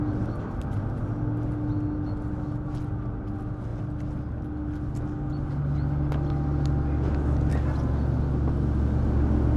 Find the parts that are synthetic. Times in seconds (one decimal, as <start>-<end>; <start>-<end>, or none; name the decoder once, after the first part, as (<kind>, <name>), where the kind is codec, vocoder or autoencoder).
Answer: none